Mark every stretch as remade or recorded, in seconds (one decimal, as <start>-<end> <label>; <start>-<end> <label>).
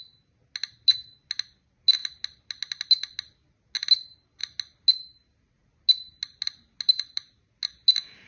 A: 0.0-8.3 recorded